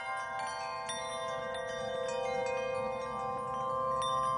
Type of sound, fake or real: real